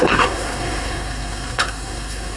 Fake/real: fake